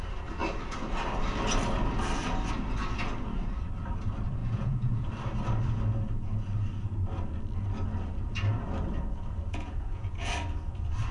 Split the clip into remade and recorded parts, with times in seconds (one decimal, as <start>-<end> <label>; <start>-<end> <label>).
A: 0.0-4.4 recorded; 4.4-5.1 remade; 5.1-9.5 recorded; 9.5-10.3 remade; 10.3-11.1 recorded